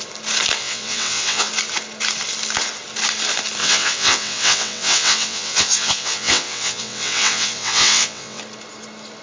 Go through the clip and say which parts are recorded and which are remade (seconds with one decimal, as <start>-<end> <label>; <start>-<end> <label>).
0.0-0.6 recorded; 0.6-1.5 remade; 1.5-3.6 recorded; 3.6-8.4 remade; 8.4-9.2 recorded